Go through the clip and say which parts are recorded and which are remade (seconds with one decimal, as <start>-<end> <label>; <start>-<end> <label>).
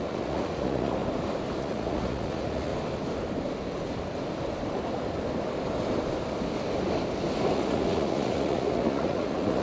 0.0-1.0 remade; 1.0-1.6 recorded; 1.6-2.7 remade; 2.7-7.5 recorded; 7.5-9.6 remade